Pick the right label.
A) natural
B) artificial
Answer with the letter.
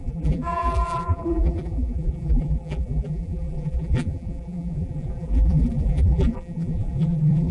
B